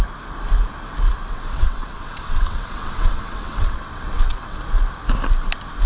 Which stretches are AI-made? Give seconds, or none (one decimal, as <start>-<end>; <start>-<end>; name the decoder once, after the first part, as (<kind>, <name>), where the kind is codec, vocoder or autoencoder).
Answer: 1.3-4.6 (vocoder, WaveNeXt)